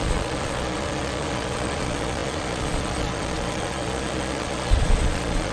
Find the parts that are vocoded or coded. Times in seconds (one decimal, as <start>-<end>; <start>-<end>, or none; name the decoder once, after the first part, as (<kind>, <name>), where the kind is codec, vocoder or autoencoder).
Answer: 0.0-5.5 (vocoder, Vocos)